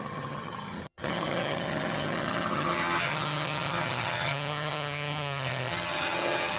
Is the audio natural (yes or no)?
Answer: no